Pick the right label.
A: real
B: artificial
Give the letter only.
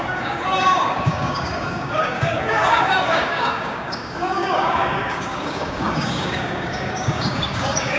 B